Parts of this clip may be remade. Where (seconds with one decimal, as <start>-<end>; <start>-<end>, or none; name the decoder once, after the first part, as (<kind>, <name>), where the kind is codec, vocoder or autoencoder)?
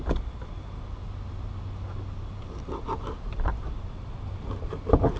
none